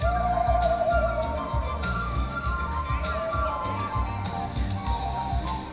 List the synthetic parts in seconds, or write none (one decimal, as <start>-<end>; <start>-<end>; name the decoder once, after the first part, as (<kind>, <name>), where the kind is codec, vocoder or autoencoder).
1.9-2.8 (codec, DAC)